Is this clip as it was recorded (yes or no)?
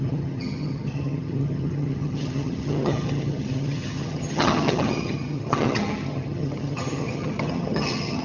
no